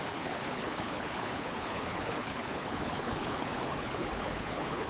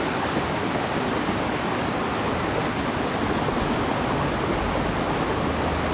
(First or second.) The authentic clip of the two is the second